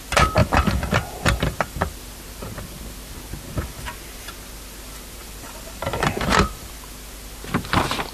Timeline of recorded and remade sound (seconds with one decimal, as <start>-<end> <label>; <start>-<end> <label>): 0.0-0.4 recorded; 0.4-2.0 remade; 2.0-5.2 recorded; 5.2-6.9 remade; 6.9-8.1 recorded

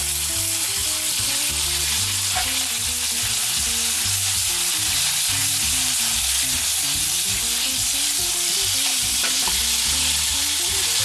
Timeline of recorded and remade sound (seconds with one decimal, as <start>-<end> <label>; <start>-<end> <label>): 0.0-5.4 recorded; 5.4-9.6 remade; 9.6-11.0 recorded

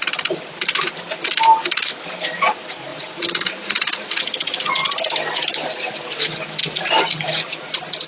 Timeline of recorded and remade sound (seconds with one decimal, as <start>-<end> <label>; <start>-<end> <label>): 0.0-2.9 recorded; 2.9-4.2 remade; 4.2-6.6 recorded; 6.6-7.1 remade; 7.1-8.1 recorded

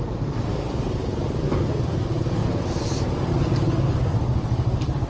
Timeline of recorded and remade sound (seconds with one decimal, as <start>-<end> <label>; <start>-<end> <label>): 0.0-2.4 remade; 2.4-3.3 recorded; 3.3-5.1 remade

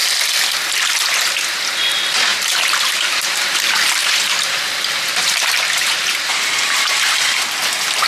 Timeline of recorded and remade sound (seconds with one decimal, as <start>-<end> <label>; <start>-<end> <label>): 0.0-2.3 recorded; 2.3-7.2 remade; 7.2-8.1 recorded

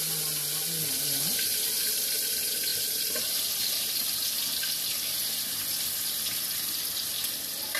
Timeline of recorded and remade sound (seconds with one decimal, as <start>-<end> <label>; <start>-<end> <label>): 0.0-7.8 recorded

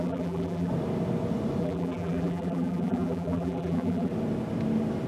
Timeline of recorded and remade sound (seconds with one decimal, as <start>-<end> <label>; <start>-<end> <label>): 0.0-0.7 remade; 0.7-1.6 recorded; 1.6-4.1 remade; 4.1-5.1 recorded

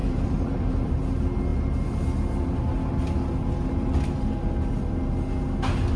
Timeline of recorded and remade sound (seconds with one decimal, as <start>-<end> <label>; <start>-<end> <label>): 0.0-0.9 remade; 0.9-6.0 recorded